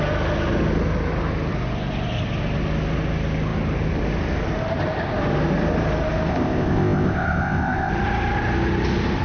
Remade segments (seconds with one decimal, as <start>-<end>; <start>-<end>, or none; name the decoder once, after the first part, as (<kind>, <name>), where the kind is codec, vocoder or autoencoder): 6.3-7.9 (codec, ZipCodec)